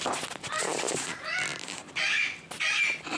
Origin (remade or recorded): recorded